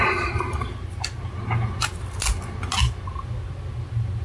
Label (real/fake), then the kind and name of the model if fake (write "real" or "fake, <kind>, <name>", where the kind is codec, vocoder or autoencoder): real